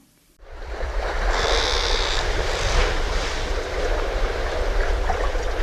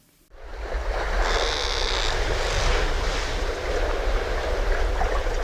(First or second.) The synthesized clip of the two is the first